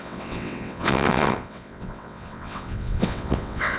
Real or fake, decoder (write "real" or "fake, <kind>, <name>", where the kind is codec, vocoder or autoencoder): fake, vocoder, WaveNeXt